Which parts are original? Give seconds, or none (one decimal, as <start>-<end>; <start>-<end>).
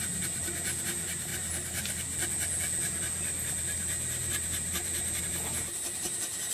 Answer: 0.0-6.5